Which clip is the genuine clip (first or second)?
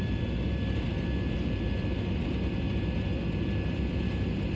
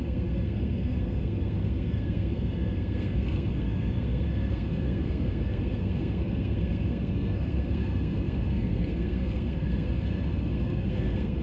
first